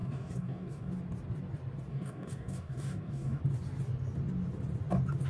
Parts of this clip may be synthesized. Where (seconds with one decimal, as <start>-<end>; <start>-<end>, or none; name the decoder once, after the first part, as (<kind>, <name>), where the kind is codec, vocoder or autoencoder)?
0.0-0.9 (codec, DAC); 1.9-3.4